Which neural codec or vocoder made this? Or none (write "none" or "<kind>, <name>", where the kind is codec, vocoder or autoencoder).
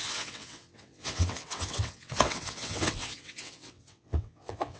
vocoder, WaveNeXt